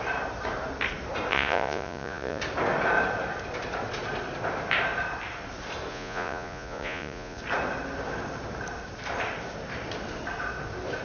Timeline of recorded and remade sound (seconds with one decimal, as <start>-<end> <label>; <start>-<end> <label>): 0.0-1.3 recorded; 1.3-2.4 remade; 2.4-5.9 recorded; 5.9-7.4 remade; 7.4-11.0 recorded